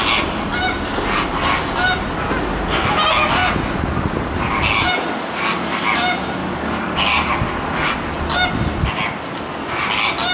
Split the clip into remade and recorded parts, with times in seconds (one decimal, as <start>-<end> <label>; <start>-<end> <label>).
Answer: 0.0-6.4 recorded; 6.4-7.3 remade; 7.3-10.3 recorded